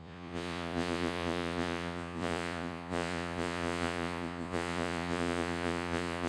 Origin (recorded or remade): remade